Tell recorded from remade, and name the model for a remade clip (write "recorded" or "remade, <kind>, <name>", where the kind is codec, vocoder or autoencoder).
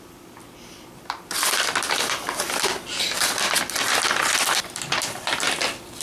remade, vocoder, BigVGAN v2